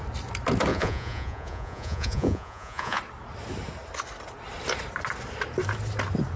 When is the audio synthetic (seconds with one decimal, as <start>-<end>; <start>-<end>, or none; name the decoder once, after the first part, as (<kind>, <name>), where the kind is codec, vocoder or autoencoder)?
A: 0.7-3.0 (vocoder, Vocos)